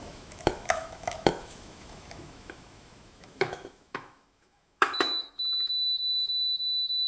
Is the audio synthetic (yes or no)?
yes